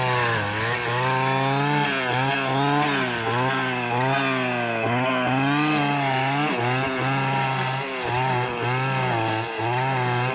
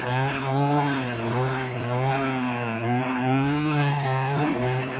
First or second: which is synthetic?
second